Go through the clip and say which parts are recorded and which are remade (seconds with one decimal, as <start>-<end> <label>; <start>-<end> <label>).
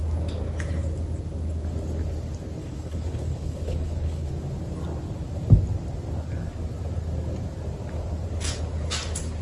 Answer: 0.0-2.6 recorded; 2.6-4.3 remade; 4.3-9.4 recorded